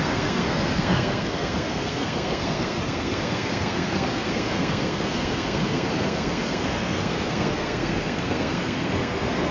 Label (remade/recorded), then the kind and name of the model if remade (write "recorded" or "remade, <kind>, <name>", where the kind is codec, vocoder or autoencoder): remade, codec, SNAC